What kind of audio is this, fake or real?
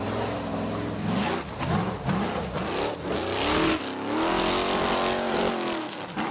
real